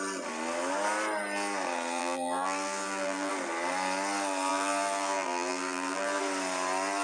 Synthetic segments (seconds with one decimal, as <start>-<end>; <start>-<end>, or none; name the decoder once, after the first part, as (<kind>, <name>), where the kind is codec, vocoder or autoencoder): 2.0-3.3 (vocoder, BigVGAN v2); 4.5-6.2